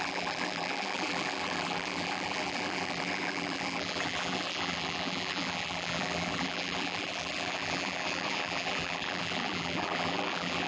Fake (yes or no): yes